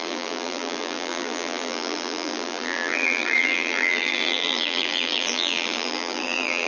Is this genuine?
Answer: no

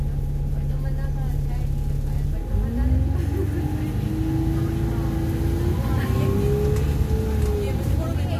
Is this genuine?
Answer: yes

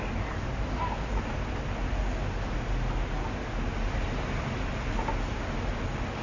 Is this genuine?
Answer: yes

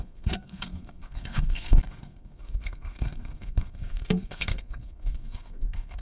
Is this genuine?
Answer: no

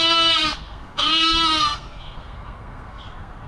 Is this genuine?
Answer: no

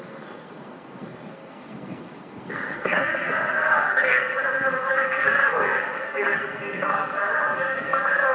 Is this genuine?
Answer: no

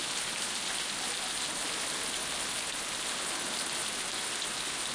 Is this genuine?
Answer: yes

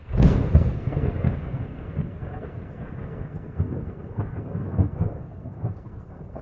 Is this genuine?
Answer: no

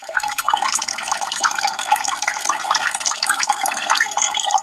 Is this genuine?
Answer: no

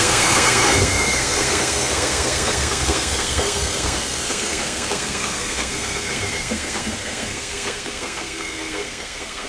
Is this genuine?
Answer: no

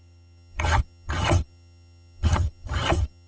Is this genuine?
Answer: no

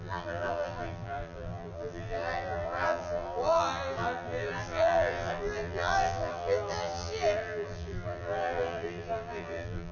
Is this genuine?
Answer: no